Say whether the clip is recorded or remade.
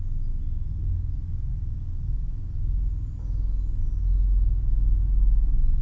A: recorded